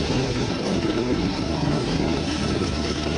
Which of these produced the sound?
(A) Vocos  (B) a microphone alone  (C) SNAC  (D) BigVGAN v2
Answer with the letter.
C